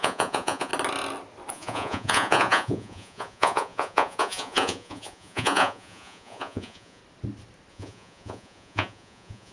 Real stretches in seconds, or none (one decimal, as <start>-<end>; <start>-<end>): 0.7-1.5; 7.0-7.7